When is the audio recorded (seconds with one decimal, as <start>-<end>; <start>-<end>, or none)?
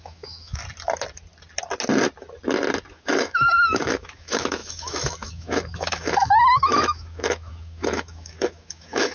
0.6-2.9